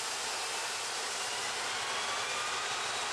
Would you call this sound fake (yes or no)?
no